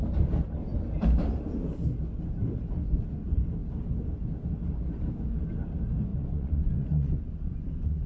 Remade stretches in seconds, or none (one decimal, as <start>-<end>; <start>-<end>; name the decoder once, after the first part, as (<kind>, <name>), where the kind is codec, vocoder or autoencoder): 6.1-8.1 (vocoder, Vocos)

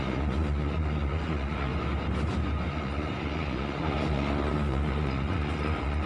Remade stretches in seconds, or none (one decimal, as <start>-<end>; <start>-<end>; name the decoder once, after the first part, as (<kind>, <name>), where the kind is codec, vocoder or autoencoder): 0.0-1.7 (vocoder, Vocos); 2.7-6.1

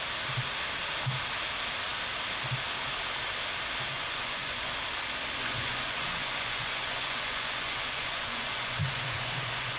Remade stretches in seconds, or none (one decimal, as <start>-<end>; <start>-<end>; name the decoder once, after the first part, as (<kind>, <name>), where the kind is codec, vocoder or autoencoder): 3.9-4.7 (vocoder, Vocos); 5.4-9.8

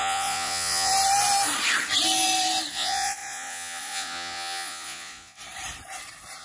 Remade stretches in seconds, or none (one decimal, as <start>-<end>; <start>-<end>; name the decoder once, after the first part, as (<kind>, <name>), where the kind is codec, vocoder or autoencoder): 0.0-0.9 (vocoder, Vocos); 2.7-5.4

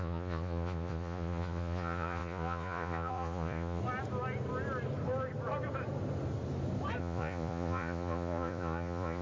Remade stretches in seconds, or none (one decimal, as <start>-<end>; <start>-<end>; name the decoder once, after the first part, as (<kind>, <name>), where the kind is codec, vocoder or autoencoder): 0.0-3.8 (vocoder, Vocos); 7.0-9.2

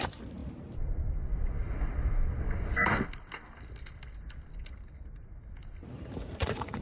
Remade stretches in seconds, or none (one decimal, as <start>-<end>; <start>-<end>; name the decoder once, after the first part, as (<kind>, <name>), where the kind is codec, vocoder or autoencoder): 6.2-6.8 (vocoder, Vocos)

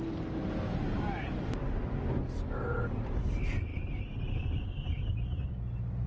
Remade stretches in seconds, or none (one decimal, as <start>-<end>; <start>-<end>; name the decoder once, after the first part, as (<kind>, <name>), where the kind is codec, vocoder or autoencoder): none